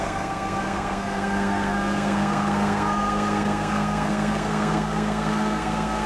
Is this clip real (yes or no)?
no